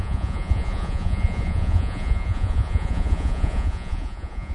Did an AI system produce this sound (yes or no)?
yes